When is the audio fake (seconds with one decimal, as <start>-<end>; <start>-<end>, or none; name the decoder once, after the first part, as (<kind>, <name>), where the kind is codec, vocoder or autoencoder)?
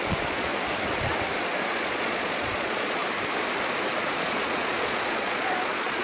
0.0-0.5 (vocoder, Vocos); 1.7-3.0; 4.0-6.0